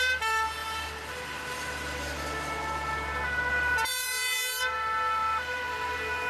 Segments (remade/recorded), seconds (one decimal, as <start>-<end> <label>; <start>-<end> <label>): 0.0-6.3 recorded